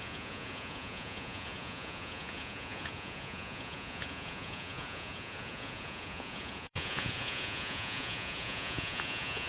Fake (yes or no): yes